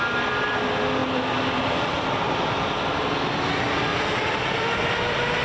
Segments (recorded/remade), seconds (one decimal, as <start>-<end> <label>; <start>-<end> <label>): 0.0-3.9 recorded; 3.9-4.9 remade; 4.9-5.4 recorded